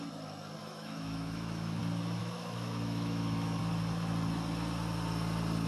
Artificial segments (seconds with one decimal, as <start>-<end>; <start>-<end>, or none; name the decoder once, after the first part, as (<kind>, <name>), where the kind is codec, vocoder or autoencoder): 0.6-1.8 (autoencoder, DAC-VAE); 2.2-3.6